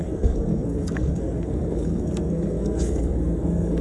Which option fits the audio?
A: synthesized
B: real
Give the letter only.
A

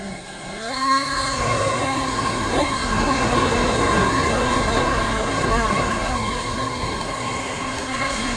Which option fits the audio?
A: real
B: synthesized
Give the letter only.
B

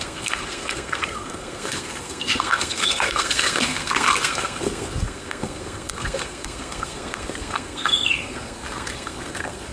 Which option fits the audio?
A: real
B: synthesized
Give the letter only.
B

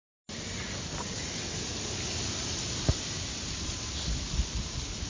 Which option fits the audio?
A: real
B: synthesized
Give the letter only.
A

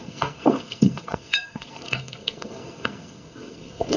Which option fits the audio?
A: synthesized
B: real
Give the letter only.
A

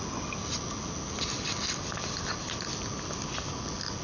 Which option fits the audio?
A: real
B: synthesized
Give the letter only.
A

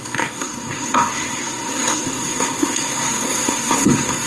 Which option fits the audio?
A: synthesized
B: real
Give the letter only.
A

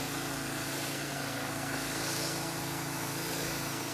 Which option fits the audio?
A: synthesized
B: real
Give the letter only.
A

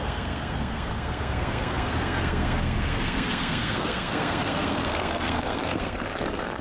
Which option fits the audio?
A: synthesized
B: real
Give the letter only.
A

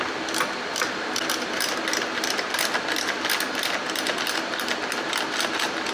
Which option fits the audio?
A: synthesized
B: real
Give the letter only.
B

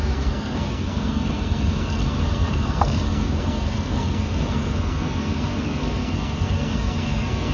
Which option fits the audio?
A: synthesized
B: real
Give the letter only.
A